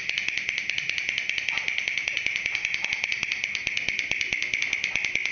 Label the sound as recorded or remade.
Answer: recorded